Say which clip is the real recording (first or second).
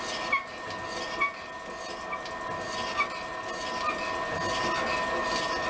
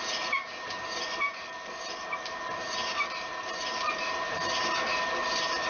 first